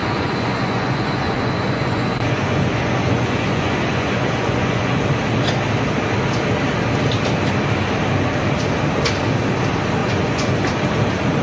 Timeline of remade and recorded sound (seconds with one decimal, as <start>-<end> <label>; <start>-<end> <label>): 0.0-5.1 remade; 5.1-10.0 recorded; 10.0-10.6 remade; 10.6-11.4 recorded